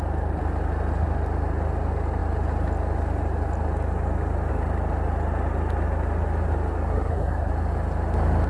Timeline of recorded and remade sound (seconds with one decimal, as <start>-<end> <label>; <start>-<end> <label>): 0.0-6.9 recorded; 6.9-7.5 remade; 7.5-8.5 recorded